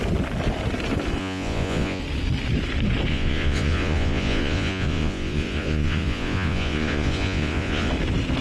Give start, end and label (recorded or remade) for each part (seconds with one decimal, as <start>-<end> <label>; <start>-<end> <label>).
0.0-1.2 recorded; 1.2-2.0 remade; 2.0-3.1 recorded; 3.1-7.9 remade; 7.9-8.4 recorded